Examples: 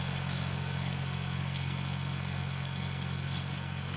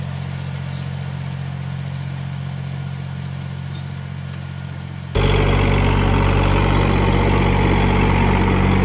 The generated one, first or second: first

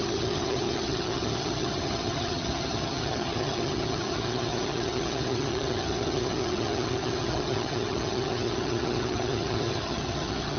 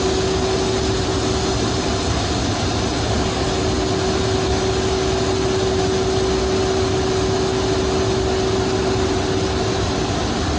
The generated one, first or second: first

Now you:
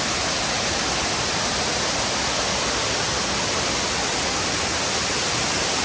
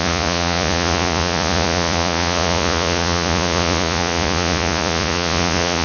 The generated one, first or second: second